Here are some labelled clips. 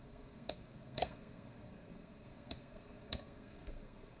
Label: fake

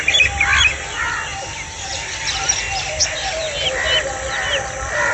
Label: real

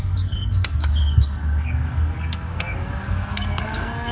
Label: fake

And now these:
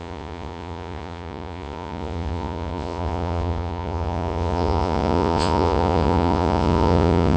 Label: fake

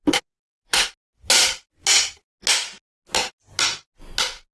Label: real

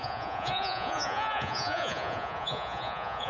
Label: fake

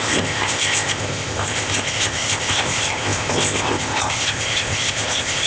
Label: fake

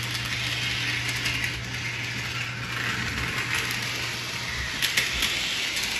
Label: real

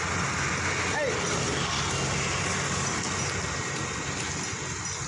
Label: real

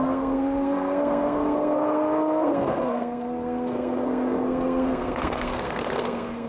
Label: fake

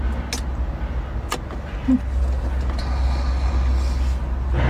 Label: real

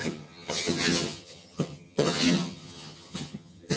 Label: fake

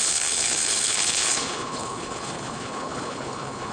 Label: fake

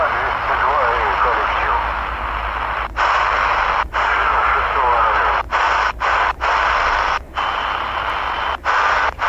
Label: real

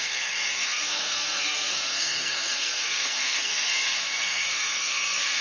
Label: fake